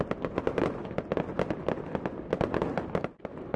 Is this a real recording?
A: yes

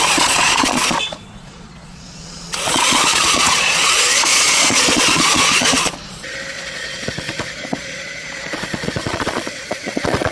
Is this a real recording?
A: no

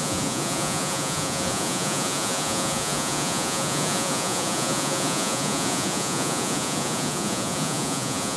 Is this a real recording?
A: no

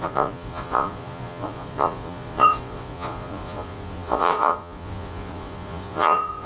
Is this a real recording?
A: no